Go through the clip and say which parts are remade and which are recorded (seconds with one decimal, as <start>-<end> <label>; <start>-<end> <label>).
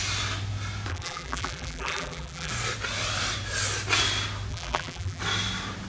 0.0-0.9 recorded; 0.9-2.5 remade; 2.5-4.5 recorded; 4.5-5.2 remade; 5.2-5.9 recorded